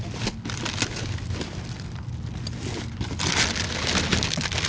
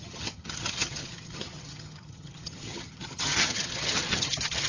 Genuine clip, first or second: first